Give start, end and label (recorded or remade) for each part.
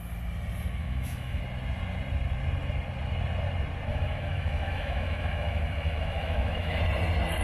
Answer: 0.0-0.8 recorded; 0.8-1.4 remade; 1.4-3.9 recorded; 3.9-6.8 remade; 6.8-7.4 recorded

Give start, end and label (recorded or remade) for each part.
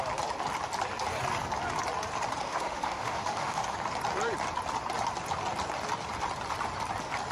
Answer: 0.0-2.4 recorded; 2.4-3.6 remade; 3.6-7.3 recorded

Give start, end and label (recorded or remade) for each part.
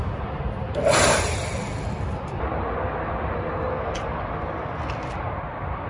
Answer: 0.0-5.9 recorded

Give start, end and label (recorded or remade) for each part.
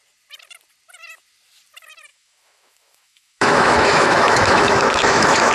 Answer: 0.0-2.1 recorded; 2.1-5.5 remade